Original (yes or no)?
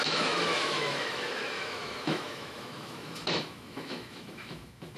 no